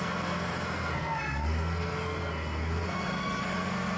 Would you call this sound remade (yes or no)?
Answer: yes